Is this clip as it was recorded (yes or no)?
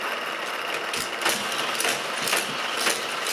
yes